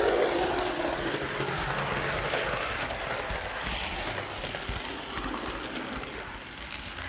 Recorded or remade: recorded